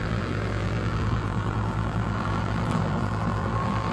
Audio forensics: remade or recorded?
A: remade